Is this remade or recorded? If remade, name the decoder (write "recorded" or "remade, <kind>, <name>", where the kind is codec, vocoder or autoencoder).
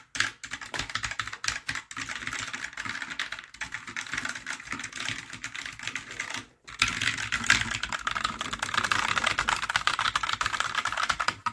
recorded